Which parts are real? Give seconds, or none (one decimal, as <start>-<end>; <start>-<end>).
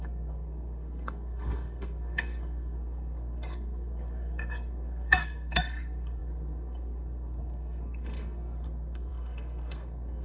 none